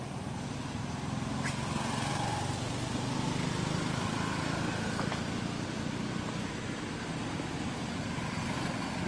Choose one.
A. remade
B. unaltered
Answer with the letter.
B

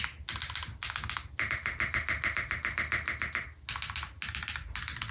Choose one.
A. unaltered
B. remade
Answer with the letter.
A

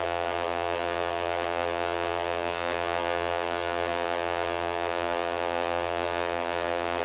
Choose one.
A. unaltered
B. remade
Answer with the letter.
B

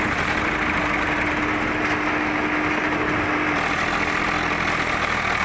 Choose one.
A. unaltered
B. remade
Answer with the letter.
A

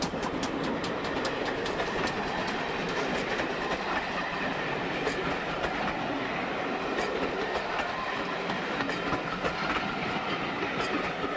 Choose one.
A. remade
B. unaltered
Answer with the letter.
B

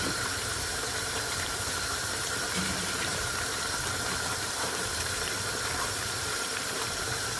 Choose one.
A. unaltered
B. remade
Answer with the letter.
B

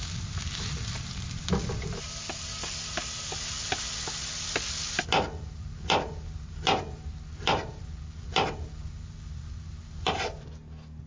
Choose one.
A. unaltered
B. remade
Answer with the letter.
A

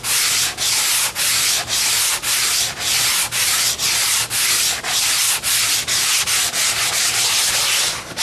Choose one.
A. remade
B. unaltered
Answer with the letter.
B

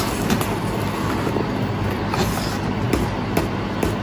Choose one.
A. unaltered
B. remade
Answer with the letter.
A